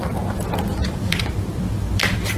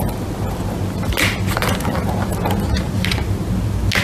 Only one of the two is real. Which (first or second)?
second